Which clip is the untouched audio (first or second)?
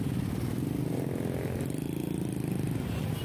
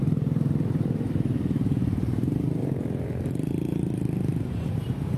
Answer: first